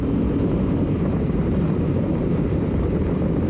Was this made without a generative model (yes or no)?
no